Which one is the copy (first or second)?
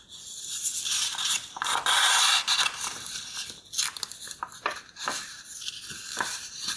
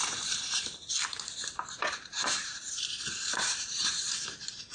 second